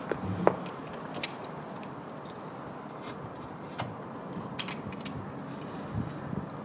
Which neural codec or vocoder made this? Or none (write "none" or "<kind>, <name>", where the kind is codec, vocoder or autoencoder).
none